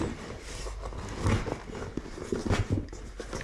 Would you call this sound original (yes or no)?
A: yes